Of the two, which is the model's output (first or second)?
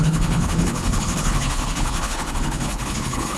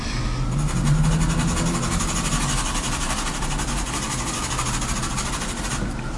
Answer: first